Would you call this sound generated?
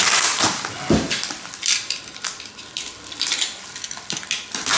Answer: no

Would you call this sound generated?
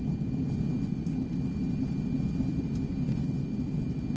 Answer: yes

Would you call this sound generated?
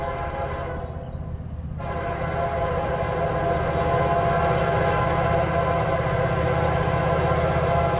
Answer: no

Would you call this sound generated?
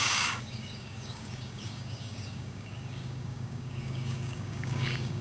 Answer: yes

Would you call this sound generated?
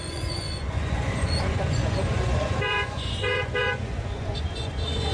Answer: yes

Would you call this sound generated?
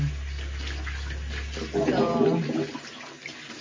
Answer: no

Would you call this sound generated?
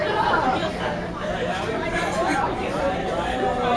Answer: no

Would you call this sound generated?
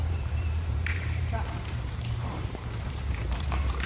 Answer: yes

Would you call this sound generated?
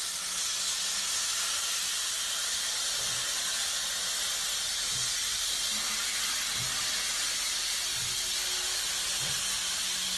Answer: no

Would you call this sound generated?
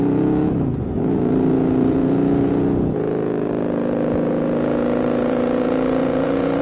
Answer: yes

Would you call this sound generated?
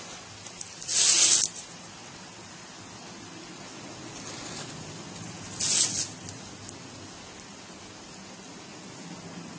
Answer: no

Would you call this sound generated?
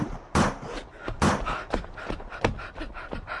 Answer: no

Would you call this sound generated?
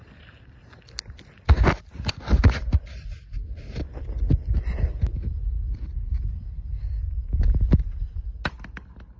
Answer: no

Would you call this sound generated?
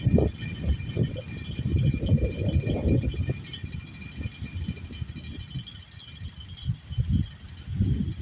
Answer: no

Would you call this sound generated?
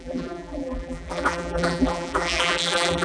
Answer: yes